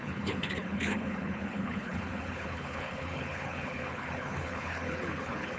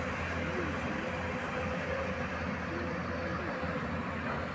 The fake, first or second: first